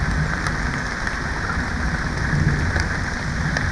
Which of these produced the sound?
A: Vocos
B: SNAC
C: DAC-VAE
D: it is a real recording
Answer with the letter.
D